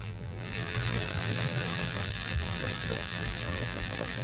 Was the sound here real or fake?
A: fake